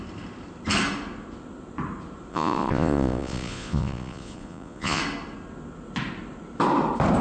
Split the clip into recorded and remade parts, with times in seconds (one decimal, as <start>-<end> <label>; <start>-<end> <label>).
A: 0.0-2.3 recorded; 2.3-5.0 remade; 5.0-7.2 recorded